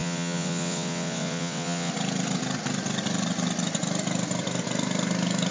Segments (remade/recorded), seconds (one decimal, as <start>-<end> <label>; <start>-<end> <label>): 0.0-1.9 remade; 1.9-5.5 recorded